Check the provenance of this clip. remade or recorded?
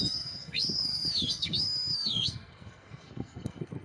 remade